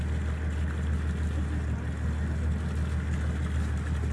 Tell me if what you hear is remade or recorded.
recorded